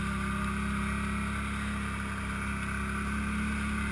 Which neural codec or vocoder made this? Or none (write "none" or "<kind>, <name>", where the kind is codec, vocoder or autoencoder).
none